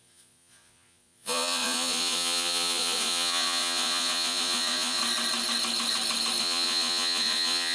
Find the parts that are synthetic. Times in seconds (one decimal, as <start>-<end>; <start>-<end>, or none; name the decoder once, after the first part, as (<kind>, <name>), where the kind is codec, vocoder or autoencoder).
0.0-5.0 (vocoder, Vocos); 6.4-7.7